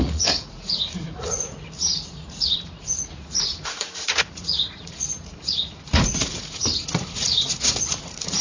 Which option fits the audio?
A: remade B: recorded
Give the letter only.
A